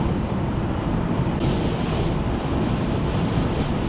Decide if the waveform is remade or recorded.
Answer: remade